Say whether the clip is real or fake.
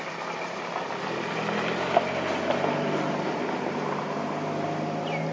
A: real